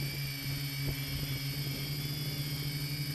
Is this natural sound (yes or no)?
yes